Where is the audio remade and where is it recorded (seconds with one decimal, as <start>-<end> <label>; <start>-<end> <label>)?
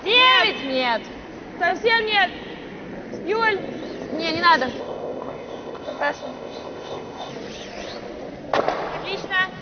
0.0-4.8 recorded; 4.8-7.3 remade; 7.3-9.6 recorded